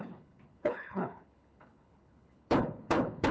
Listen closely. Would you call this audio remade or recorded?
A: remade